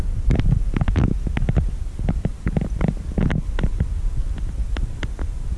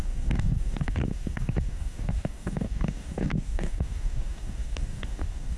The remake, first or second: second